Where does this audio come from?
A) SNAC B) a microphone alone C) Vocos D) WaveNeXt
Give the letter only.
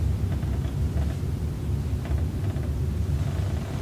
B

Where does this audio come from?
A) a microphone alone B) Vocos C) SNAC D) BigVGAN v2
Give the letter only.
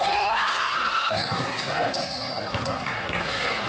C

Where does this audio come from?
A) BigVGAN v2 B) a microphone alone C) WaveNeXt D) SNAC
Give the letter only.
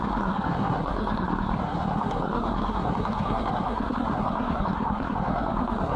D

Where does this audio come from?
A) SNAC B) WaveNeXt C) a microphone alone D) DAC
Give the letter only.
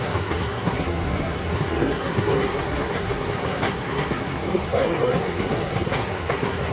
A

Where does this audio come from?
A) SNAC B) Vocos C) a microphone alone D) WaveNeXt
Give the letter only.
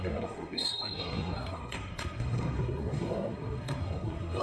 A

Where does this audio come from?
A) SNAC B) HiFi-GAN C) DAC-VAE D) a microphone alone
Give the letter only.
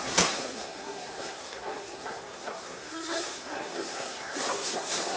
A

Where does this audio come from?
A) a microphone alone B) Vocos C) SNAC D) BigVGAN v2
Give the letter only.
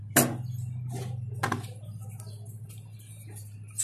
A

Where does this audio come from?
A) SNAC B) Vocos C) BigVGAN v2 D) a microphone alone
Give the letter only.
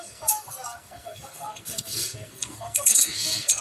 A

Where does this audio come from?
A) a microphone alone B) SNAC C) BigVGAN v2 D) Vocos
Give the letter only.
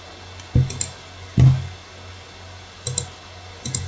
A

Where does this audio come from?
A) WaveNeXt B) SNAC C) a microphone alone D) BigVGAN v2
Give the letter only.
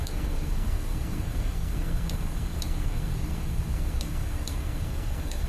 B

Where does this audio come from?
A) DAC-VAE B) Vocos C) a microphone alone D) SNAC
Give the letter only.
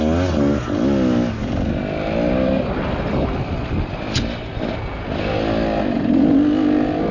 C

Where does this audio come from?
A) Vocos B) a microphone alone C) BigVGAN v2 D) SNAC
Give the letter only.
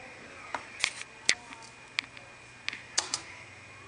B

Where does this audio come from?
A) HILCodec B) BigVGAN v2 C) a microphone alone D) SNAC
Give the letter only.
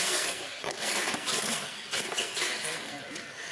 D